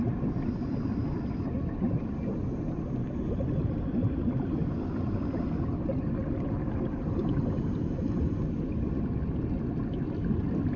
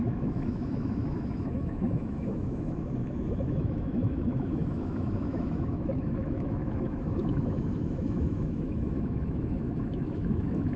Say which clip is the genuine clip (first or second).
first